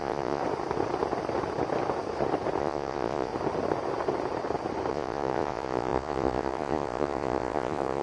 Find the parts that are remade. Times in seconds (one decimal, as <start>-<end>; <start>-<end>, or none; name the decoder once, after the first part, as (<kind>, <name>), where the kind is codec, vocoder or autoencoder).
0.0-0.4 (vocoder, Vocos); 2.6-3.3; 4.9-8.0